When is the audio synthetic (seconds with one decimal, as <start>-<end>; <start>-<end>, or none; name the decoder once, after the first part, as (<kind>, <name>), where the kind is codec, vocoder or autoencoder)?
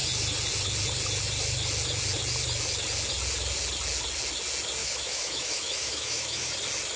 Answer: 4.8-6.5 (autoencoder, DAC-VAE)